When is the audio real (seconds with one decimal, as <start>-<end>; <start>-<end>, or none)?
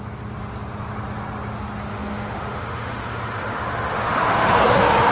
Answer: 0.0-1.9